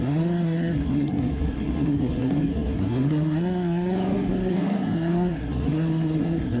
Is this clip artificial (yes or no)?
yes